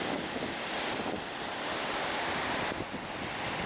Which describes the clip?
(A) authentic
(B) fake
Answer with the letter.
A